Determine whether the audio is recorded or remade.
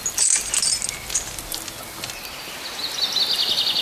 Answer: recorded